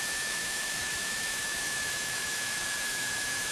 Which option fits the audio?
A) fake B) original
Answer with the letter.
A